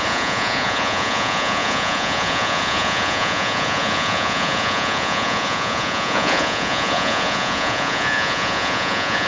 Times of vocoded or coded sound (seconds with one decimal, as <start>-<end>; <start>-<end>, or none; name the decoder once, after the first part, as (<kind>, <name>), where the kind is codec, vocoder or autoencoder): 0.0-9.3 (vocoder, Vocos)